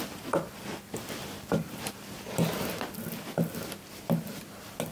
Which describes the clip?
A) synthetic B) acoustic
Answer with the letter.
B